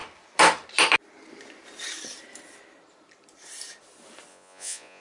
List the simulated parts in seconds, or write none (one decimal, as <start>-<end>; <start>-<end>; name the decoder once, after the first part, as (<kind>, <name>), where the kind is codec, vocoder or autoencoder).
4.3-5.0 (vocoder, Vocos)